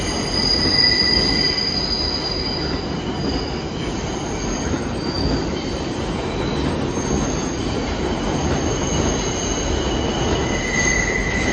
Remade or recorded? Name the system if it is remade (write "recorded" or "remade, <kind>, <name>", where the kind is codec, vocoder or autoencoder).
recorded